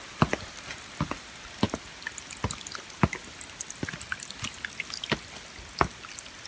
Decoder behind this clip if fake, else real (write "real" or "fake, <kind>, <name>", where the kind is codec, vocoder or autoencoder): real